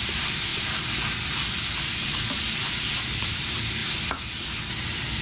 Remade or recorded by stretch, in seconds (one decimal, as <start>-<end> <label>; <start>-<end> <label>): 0.0-0.5 remade; 0.5-2.7 recorded; 2.7-3.8 remade; 3.8-4.8 recorded; 4.8-5.2 remade